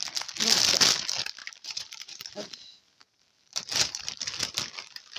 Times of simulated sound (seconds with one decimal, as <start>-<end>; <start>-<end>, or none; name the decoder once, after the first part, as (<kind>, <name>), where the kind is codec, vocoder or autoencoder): 1.4-2.5 (vocoder, BigVGAN v2); 3.0-4.1